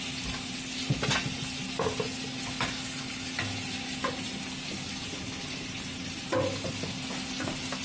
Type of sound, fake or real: real